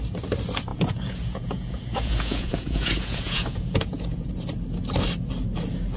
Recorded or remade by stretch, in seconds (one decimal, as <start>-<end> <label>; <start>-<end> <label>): 0.0-0.7 recorded; 0.7-4.3 remade; 4.3-6.0 recorded